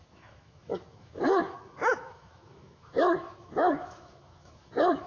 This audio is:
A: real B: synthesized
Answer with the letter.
B